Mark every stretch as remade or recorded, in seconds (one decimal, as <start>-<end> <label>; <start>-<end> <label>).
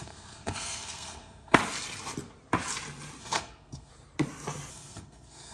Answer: 0.0-1.6 remade; 1.6-3.2 recorded; 3.2-3.9 remade; 3.9-4.7 recorded; 4.7-5.5 remade